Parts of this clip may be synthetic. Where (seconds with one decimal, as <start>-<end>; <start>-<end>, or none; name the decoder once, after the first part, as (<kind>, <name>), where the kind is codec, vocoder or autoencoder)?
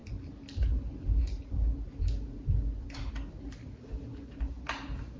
none